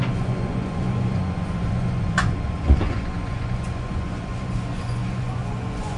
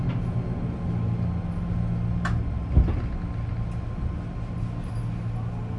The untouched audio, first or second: second